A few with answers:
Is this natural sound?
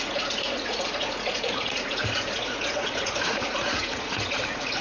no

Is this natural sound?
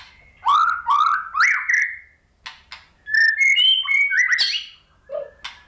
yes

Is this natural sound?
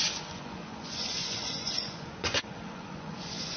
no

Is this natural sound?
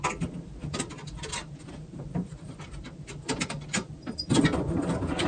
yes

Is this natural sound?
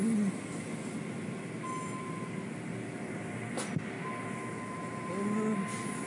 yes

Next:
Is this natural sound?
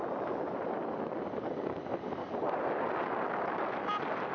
yes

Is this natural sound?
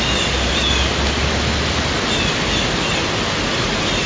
yes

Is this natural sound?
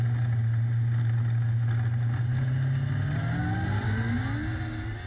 yes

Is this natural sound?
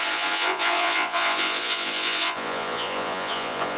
no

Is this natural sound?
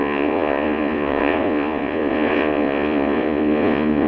no